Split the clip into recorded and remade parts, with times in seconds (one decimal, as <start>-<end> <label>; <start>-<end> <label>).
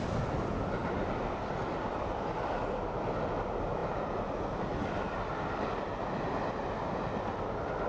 0.0-0.8 recorded; 0.8-2.6 remade; 2.6-7.9 recorded